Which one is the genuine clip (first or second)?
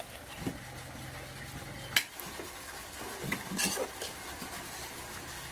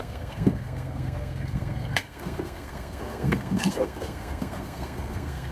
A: first